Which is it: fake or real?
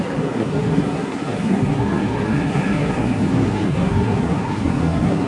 fake